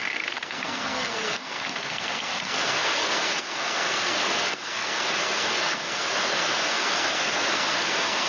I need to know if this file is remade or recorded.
remade